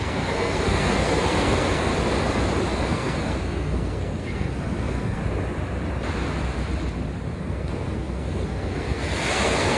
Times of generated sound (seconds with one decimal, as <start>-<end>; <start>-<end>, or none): 0.0-1.9; 2.7-5.2; 7.4-9.8